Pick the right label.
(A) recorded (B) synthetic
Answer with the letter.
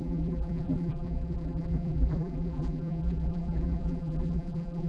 B